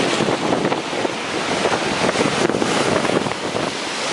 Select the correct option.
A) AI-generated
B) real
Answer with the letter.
B